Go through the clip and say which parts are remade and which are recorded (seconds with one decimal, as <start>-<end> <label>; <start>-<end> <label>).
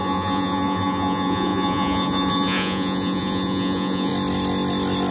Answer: 0.0-4.1 remade; 4.1-5.1 recorded